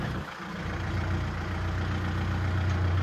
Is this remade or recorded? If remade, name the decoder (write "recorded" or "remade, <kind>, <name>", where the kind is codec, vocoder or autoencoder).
recorded